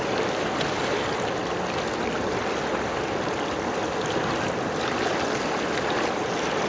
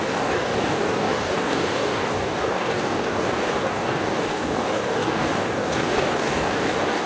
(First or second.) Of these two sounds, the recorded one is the first